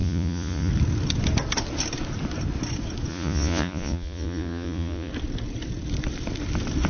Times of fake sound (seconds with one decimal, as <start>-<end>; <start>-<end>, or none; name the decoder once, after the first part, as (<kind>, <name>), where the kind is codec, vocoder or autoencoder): 0.0-0.7 (vocoder, Vocos); 3.1-5.1